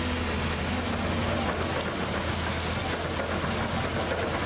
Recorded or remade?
recorded